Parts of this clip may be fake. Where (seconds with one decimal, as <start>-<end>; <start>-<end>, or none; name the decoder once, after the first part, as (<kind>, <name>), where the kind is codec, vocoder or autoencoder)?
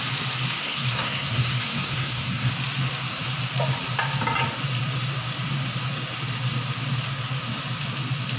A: 0.6-2.5 (codec, SNAC)